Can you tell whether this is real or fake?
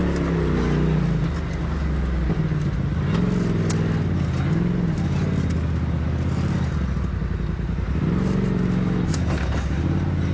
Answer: real